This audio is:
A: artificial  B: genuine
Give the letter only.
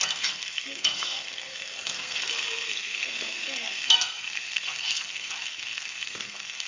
A